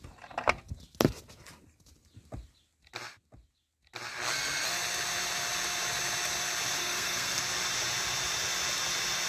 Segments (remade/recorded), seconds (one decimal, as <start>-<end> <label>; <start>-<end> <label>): 0.0-6.8 recorded; 6.8-7.4 remade; 7.4-9.3 recorded